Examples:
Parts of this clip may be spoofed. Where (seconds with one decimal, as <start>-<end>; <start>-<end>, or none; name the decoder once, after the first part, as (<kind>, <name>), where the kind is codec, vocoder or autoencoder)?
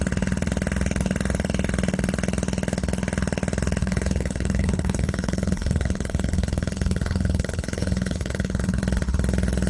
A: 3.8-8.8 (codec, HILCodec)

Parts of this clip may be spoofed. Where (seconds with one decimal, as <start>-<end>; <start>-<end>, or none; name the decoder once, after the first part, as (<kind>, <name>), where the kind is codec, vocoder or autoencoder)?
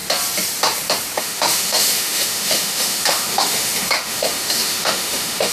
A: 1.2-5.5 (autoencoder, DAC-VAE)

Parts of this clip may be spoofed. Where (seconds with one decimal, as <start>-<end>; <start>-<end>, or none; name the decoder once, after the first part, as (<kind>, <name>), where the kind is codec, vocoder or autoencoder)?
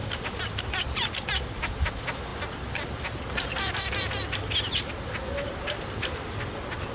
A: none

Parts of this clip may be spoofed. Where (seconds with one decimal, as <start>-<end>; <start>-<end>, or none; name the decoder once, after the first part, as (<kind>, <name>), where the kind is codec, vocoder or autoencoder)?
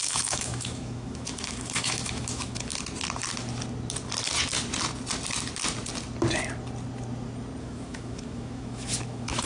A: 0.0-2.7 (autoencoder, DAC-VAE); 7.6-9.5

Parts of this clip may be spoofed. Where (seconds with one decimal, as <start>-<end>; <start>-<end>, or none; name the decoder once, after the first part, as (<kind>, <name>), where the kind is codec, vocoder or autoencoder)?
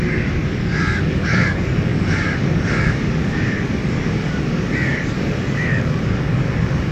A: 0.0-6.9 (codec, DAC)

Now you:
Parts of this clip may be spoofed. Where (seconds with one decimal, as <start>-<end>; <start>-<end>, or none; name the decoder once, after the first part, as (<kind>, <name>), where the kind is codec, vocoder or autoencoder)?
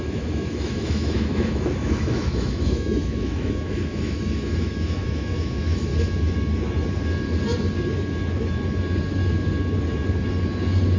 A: 0.0-5.9 (autoencoder, DAC-VAE)